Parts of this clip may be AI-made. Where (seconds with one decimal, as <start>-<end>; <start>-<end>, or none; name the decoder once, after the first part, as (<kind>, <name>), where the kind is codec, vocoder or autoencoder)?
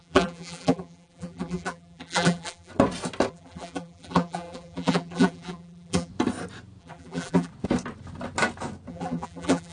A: 0.0-2.7 (vocoder, BigVGAN v2); 3.3-6.1; 6.8-7.5; 8.9-9.7